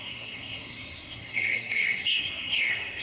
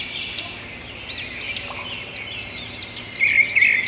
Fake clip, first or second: first